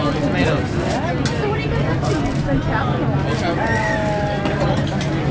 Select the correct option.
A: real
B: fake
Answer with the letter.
A